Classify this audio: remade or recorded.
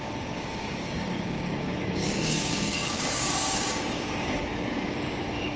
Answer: remade